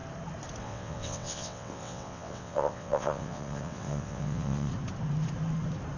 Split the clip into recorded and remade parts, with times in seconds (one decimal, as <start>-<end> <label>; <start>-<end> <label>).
0.0-0.6 recorded; 0.6-4.7 remade; 4.7-6.0 recorded